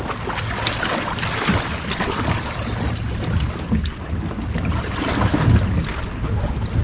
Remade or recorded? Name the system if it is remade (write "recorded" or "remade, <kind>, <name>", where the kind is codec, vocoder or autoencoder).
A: recorded